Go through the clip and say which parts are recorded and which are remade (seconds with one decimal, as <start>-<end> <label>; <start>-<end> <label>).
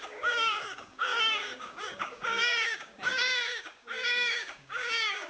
0.0-5.3 remade